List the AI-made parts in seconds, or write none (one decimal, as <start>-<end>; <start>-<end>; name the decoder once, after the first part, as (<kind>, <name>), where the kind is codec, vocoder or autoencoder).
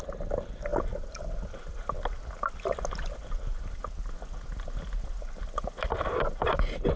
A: none